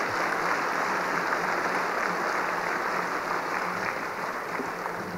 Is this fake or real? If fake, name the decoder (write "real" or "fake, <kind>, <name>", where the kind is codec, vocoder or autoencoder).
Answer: fake, vocoder, BigVGAN v2